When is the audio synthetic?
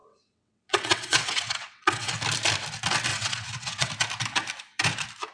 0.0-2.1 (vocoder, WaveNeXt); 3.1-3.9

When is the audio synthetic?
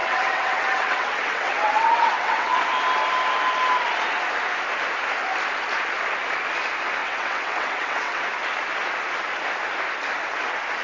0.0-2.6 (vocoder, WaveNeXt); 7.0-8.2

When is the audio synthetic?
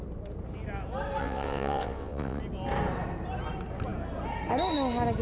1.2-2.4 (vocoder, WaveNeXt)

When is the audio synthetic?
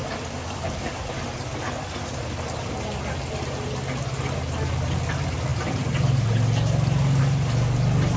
none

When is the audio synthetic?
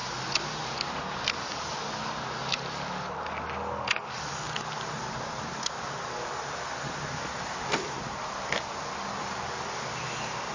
none